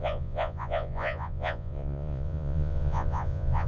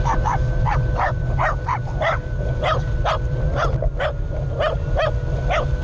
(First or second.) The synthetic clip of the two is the first